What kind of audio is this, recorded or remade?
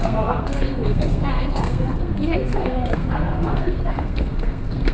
remade